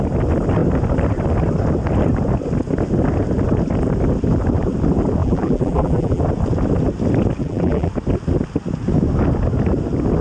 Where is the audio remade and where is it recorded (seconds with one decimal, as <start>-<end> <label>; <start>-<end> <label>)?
0.0-5.2 recorded; 5.2-6.2 remade; 6.2-7.4 recorded; 7.4-7.9 remade; 7.9-10.2 recorded